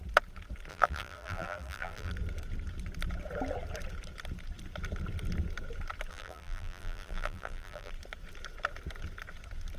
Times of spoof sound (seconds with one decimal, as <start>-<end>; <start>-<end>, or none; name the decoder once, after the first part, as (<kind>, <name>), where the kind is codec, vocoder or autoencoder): 0.7-2.1 (vocoder, BigVGAN v2); 6.1-7.9